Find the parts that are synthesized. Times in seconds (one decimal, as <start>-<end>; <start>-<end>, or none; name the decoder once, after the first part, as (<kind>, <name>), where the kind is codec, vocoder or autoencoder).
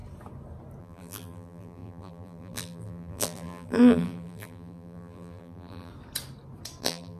0.8-5.9 (vocoder, BigVGAN v2); 6.8-7.2